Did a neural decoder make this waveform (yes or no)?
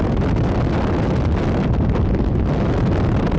no